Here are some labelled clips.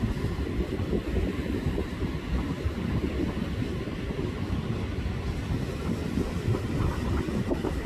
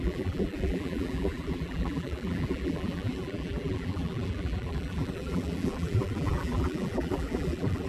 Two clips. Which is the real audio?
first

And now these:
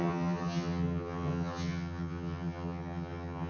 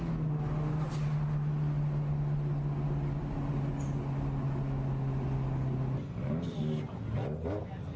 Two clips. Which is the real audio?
second